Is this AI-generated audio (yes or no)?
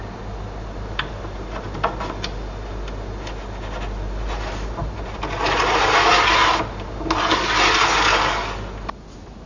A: no